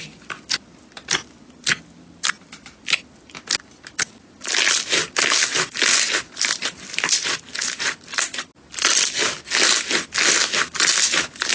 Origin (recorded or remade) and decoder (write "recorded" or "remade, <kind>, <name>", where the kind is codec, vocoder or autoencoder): recorded